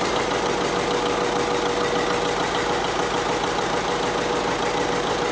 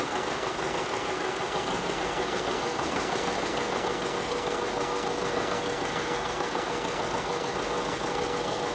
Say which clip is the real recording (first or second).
first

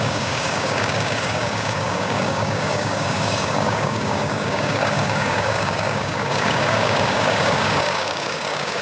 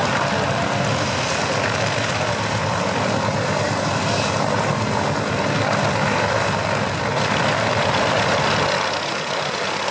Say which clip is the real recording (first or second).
second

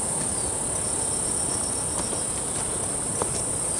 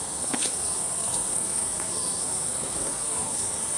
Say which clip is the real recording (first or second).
first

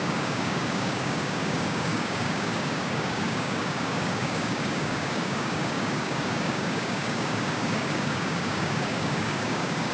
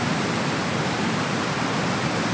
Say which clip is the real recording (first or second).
second